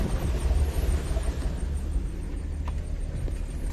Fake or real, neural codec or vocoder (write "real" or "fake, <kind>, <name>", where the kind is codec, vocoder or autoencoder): real